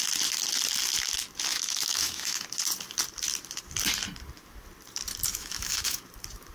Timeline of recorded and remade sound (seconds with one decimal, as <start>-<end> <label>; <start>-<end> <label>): 0.0-1.5 recorded; 1.5-2.4 remade; 2.4-5.3 recorded; 5.3-6.0 remade; 6.0-6.5 recorded